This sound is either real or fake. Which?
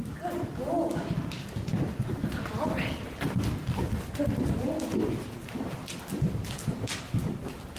real